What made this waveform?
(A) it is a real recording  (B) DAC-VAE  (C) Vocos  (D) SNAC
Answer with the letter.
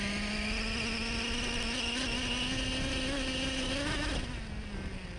A